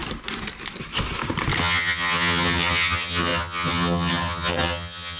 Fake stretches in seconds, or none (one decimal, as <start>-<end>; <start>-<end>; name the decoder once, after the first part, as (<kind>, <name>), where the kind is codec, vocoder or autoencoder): 1.6-5.2 (vocoder, HiFi-GAN)

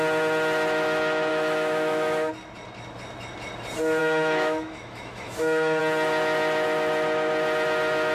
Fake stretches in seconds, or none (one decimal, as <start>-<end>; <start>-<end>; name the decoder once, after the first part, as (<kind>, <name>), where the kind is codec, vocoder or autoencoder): 1.3-2.3 (autoencoder, DAC-VAE); 4.0-5.8

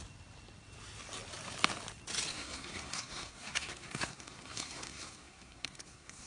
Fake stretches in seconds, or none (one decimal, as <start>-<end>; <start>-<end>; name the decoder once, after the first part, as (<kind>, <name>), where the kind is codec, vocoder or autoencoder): 2.3-6.3 (codec, SNAC)

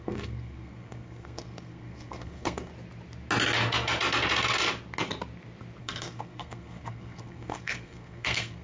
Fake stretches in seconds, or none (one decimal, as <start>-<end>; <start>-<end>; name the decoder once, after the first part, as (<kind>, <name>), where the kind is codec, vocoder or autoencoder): 0.0-2.7 (codec, SNAC); 5.8-8.6

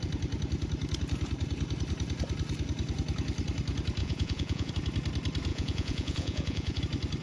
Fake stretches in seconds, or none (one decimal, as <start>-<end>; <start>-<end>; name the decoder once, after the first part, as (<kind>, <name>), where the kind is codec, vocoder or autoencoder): 4.0-4.7 (vocoder, Vocos); 5.5-6.8

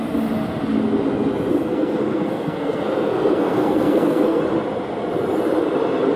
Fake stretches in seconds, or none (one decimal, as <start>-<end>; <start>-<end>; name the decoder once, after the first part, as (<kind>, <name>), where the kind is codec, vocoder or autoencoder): 1.5-4.4 (codec, SNAC)